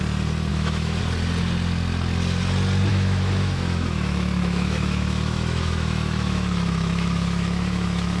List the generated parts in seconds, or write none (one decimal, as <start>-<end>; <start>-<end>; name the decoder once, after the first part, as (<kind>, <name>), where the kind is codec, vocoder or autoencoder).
0.5-1.0 (autoencoder, DAC-VAE); 2.9-8.2